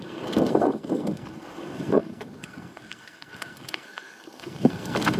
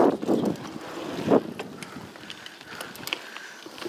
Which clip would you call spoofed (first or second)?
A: first